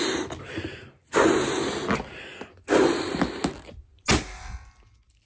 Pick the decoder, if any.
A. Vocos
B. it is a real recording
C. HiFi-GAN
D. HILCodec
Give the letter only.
B